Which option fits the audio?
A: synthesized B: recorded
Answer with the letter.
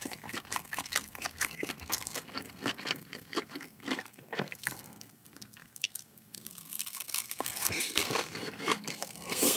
A